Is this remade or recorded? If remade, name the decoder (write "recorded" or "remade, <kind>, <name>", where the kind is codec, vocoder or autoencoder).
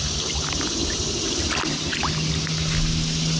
recorded